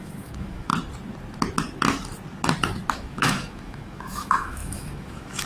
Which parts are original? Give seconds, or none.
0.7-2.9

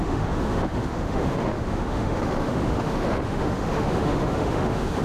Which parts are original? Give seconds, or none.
none

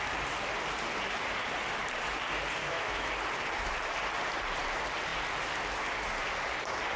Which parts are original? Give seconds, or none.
0.0-2.6; 3.1-7.0